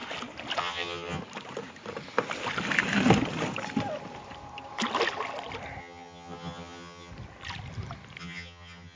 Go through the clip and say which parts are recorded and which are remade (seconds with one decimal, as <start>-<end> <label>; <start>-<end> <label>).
0.0-0.6 recorded; 0.6-1.2 remade; 1.2-5.8 recorded; 5.8-7.1 remade; 7.1-8.2 recorded; 8.2-9.0 remade